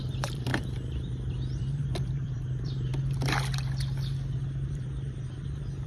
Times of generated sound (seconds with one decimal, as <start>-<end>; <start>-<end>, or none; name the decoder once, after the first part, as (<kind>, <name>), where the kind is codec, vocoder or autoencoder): 0.0-0.5 (vocoder, BigVGAN v2); 1.6-2.9; 4.7-5.9